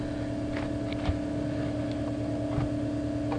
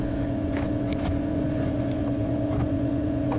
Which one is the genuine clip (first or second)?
first